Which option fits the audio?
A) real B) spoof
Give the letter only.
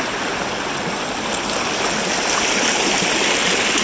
A